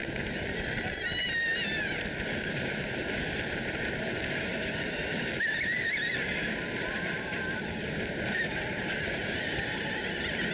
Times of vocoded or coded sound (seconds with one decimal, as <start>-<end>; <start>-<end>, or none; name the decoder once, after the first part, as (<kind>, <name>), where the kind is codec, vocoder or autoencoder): none